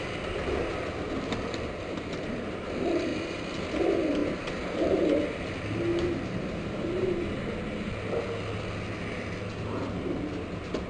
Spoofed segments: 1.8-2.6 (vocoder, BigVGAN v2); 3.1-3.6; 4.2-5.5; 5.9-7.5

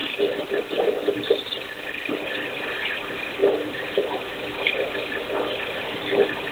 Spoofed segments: 0.0-2.1 (vocoder, BigVGAN v2)

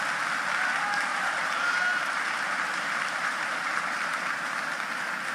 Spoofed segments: 1.1-4.3 (vocoder, BigVGAN v2)

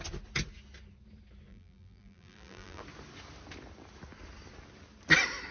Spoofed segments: 1.5-2.8 (vocoder, BigVGAN v2)

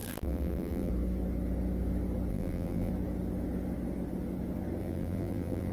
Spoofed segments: 0.0-0.9 (vocoder, BigVGAN v2); 2.3-2.9; 4.8-5.7